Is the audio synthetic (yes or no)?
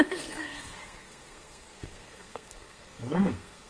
yes